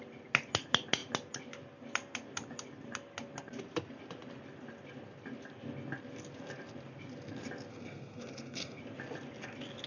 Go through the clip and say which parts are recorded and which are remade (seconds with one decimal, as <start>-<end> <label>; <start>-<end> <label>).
0.0-7.7 recorded; 7.7-8.8 remade; 8.8-9.9 recorded